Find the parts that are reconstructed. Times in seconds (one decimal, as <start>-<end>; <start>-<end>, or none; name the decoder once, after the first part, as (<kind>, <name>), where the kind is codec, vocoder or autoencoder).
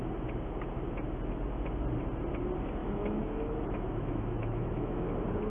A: 2.8-5.1 (autoencoder, DAC-VAE)